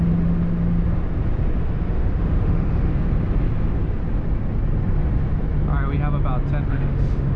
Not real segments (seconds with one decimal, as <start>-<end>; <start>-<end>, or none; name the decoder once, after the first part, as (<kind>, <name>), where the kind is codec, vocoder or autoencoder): 1.6-2.9 (autoencoder, DAC-VAE); 6.7-7.4